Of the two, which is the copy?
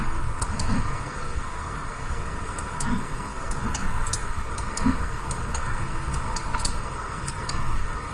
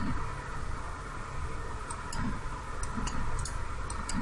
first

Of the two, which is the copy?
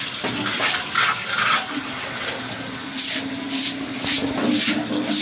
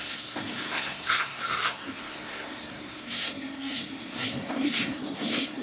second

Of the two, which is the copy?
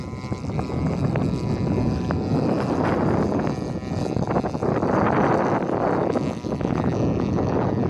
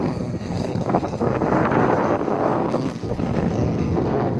second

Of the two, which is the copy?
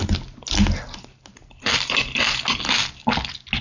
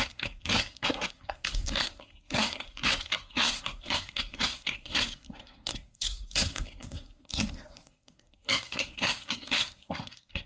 second